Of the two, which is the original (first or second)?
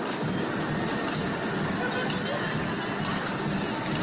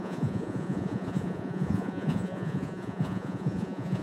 first